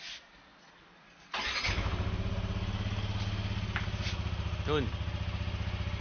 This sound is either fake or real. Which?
real